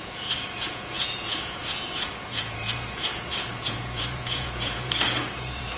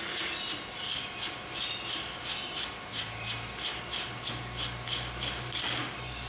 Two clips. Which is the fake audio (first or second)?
first